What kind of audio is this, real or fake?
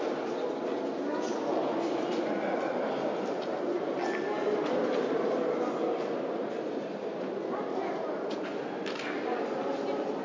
real